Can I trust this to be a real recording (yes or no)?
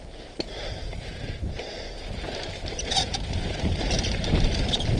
no